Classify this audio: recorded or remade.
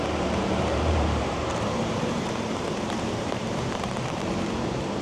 remade